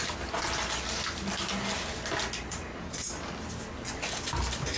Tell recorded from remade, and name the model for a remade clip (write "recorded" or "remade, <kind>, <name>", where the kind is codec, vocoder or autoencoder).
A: recorded